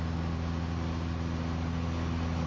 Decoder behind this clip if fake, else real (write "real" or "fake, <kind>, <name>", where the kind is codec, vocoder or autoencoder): real